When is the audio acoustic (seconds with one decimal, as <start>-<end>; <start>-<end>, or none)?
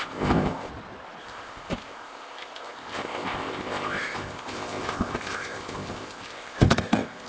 0.7-1.2